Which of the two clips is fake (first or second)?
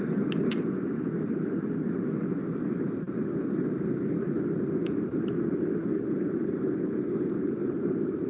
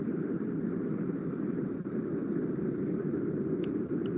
second